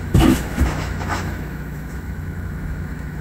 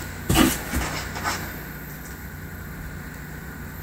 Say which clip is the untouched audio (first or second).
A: second